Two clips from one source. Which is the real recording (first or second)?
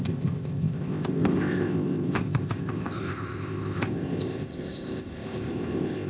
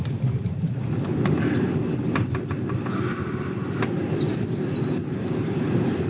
second